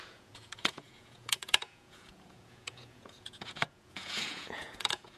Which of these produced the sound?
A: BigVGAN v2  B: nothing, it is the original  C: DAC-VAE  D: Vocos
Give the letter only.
D